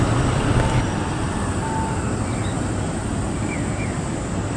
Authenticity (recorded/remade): remade